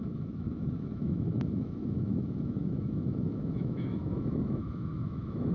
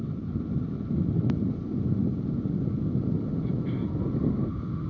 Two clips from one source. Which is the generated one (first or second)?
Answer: first